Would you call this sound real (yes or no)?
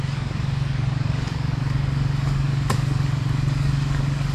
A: no